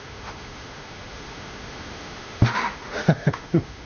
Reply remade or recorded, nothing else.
remade